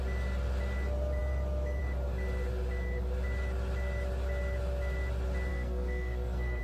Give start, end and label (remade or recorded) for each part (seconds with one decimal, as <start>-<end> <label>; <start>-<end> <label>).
0.0-5.5 recorded; 5.5-6.6 remade